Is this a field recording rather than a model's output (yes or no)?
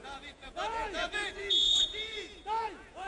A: no